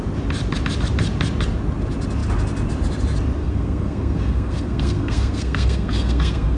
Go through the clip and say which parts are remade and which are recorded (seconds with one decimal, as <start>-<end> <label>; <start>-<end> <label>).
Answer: 0.0-3.4 recorded; 3.4-6.6 remade